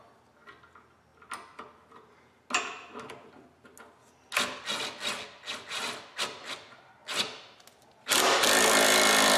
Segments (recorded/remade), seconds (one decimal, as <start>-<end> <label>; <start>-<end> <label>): 0.0-9.4 recorded